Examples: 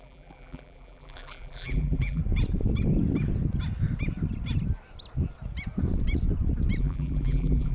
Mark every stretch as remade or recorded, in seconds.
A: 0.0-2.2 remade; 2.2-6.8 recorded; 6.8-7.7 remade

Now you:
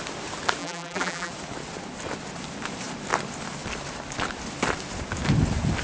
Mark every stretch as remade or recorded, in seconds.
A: 0.0-0.6 recorded; 0.6-1.3 remade; 1.3-5.8 recorded

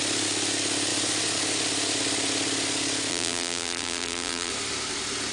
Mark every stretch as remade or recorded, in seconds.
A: 0.0-3.1 recorded; 3.1-4.5 remade; 4.5-5.3 recorded

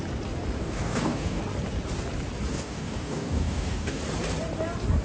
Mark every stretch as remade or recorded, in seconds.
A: 0.0-0.6 recorded; 0.6-1.4 remade; 1.4-2.5 recorded; 2.5-4.0 remade; 4.0-5.0 recorded